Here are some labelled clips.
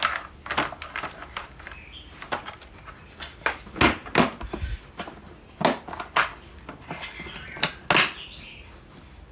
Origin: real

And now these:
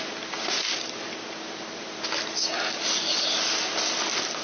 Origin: real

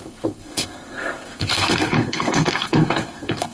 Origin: fake